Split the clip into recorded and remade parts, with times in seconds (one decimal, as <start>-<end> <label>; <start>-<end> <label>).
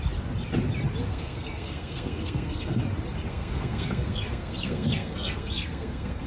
0.0-1.1 recorded; 1.1-2.8 remade; 2.8-3.3 recorded; 3.3-6.3 remade